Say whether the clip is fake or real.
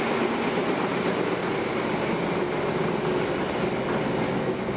real